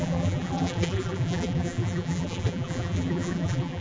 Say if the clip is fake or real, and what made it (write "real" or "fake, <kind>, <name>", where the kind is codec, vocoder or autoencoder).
fake, vocoder, BigVGAN v2